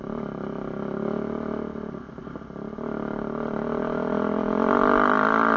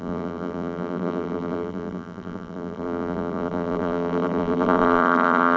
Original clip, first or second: first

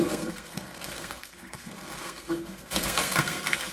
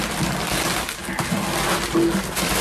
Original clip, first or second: second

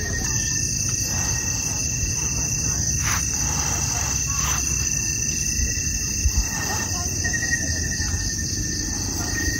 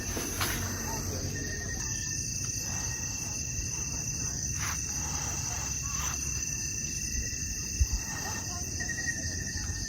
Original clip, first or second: first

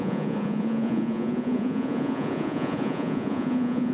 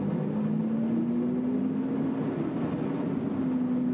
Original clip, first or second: second